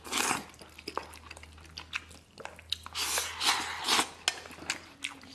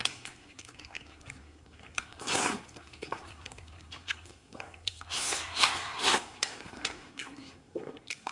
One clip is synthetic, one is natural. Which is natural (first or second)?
first